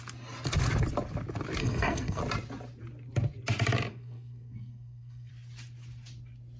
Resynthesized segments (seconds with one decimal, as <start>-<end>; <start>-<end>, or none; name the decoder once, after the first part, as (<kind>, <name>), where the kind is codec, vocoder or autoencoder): 1.6-2.2 (codec, SNAC); 3.9-5.3

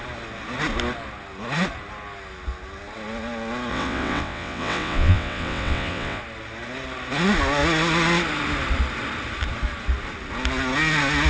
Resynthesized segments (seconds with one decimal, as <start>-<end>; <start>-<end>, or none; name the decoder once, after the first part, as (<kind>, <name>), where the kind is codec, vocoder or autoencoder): 3.7-6.2 (vocoder, WaveNeXt)

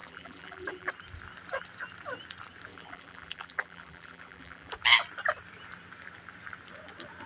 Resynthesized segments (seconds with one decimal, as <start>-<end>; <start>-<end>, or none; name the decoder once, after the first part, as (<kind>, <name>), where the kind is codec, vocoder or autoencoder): 0.0-0.9 (vocoder, BigVGAN v2); 2.7-4.7